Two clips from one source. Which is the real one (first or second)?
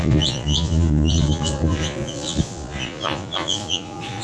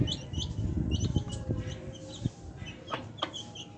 second